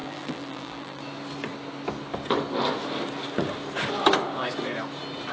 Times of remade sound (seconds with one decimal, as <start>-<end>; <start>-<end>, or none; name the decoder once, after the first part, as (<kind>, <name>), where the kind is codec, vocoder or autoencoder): 0.0-1.0 (vocoder, BigVGAN v2)